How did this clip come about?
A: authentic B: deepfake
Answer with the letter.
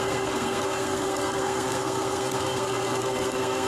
B